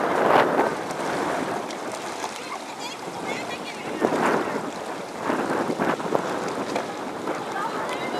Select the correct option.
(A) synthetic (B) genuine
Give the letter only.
B